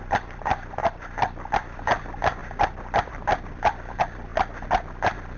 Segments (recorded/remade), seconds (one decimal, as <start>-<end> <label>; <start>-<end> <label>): 0.0-2.4 remade; 2.4-3.0 recorded; 3.0-4.3 remade; 4.3-4.9 recorded; 4.9-5.4 remade